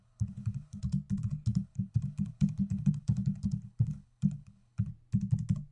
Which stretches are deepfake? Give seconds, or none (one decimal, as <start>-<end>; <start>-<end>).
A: 0.0-0.8; 1.5-4.9